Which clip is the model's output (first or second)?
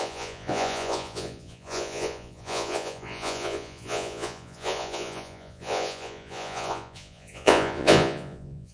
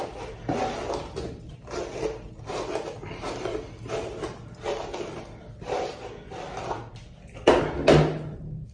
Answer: first